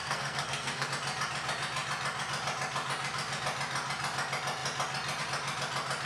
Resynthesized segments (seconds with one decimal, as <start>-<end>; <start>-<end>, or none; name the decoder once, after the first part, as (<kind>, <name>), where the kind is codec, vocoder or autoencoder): 0.0-0.9 (codec, SNAC)